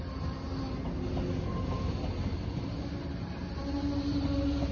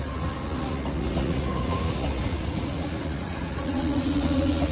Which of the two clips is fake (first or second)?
second